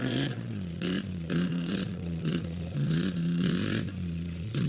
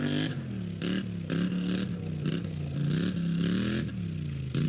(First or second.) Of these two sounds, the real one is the second